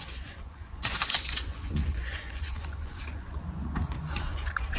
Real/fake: fake